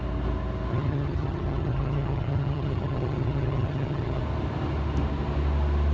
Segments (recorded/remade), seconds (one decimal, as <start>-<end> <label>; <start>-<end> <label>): 0.0-0.7 recorded; 0.7-4.2 remade; 4.2-5.9 recorded